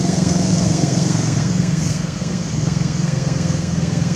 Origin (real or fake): fake